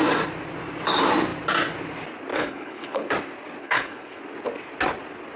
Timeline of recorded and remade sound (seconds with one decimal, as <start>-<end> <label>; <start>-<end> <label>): 0.0-2.3 recorded; 2.3-3.1 remade; 3.1-3.6 recorded; 3.6-4.2 remade; 4.2-5.4 recorded